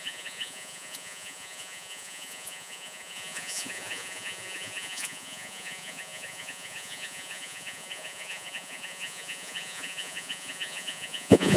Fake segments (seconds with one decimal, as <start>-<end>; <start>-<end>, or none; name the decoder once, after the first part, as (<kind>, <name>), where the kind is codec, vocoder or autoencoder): 0.0-11.6 (vocoder, Vocos)